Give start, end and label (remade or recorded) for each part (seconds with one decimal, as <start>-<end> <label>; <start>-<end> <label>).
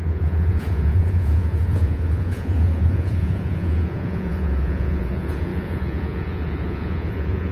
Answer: 0.0-7.5 remade